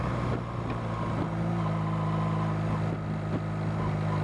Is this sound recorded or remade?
recorded